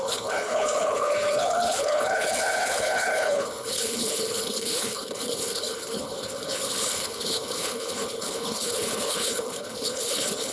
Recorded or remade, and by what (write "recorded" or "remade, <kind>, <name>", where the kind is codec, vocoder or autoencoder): remade, codec, HILCodec